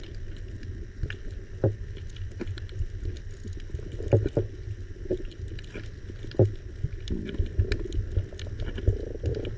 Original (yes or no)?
yes